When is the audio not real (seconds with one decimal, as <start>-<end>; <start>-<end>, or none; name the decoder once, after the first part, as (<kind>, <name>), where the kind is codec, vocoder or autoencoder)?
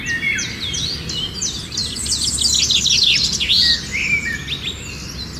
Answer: none